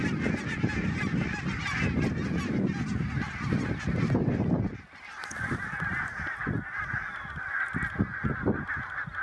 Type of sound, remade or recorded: recorded